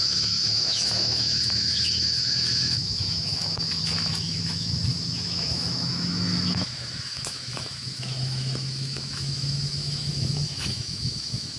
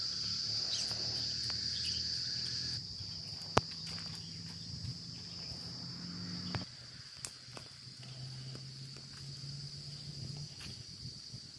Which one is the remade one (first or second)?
first